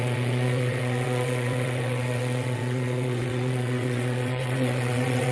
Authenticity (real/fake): fake